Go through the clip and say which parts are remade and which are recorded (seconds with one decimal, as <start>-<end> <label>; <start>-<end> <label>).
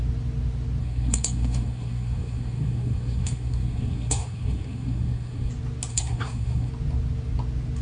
0.0-0.8 recorded; 0.8-5.5 remade; 5.5-5.9 recorded; 5.9-6.7 remade; 6.7-7.8 recorded